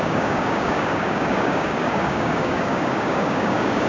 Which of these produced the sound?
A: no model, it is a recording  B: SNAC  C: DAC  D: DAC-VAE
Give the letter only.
C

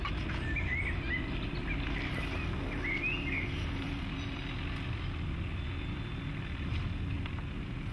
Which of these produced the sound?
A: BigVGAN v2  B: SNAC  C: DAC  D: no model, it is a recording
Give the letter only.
D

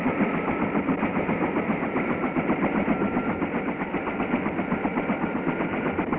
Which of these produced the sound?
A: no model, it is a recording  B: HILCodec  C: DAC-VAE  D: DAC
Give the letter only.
A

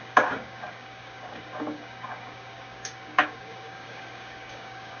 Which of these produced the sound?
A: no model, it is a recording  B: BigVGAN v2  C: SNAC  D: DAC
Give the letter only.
D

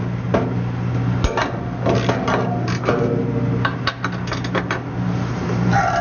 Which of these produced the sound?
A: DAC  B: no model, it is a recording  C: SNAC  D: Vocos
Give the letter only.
B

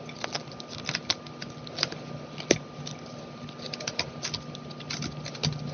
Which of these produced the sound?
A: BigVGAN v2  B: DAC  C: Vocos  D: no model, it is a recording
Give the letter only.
D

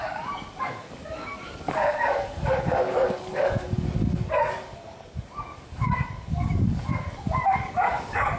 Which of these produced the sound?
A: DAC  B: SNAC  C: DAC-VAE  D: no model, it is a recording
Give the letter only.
A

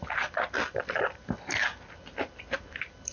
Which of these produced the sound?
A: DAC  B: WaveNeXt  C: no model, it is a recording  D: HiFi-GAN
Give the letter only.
C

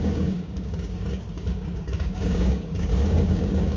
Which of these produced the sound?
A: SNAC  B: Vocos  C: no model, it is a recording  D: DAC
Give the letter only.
D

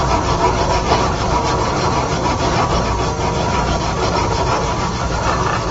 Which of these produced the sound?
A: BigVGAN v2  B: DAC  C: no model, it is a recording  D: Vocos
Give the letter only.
C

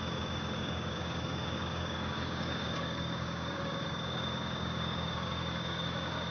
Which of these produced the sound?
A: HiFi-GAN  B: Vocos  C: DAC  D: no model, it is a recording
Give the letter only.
C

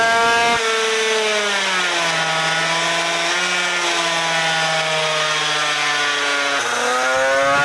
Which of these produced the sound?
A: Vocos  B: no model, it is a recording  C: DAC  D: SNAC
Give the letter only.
B